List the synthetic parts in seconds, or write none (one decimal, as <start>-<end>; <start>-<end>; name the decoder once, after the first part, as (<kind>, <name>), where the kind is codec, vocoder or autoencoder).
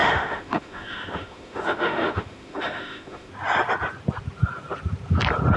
0.0-3.3 (autoencoder, DAC-VAE)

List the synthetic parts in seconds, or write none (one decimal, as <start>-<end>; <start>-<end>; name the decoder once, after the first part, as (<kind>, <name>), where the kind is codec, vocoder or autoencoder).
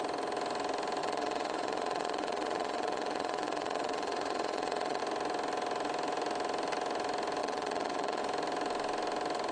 1.0-5.0 (vocoder, Vocos); 7.4-8.2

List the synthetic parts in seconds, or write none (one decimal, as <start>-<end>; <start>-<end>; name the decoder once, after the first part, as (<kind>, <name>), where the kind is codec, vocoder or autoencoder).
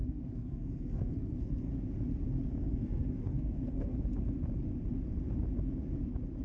0.0-1.7 (codec, SNAC); 2.6-4.0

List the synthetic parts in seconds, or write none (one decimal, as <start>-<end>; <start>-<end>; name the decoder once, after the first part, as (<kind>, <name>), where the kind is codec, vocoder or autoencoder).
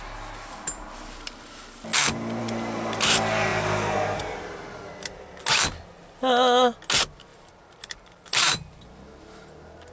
7.3-8.9 (vocoder, BigVGAN v2)